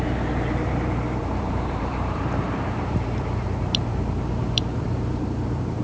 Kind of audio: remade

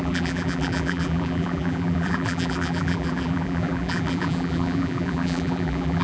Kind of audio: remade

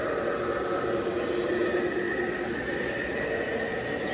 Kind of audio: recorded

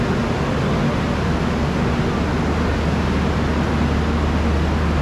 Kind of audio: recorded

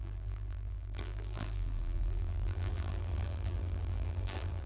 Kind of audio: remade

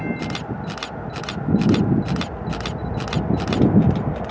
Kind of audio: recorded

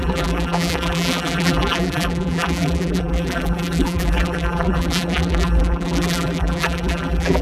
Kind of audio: remade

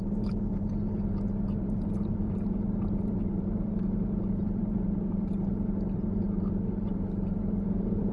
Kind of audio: remade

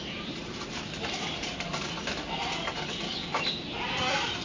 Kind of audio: remade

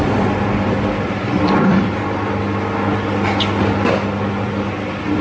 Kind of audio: recorded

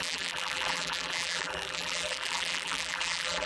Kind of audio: remade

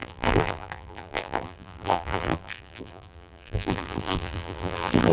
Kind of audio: remade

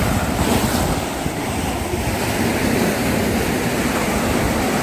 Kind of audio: recorded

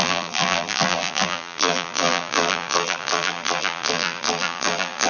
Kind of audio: remade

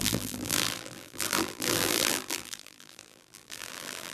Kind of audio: remade